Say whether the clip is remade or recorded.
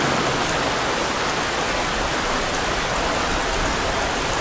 recorded